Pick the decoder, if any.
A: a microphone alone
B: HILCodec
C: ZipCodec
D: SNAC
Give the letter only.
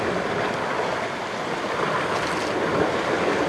A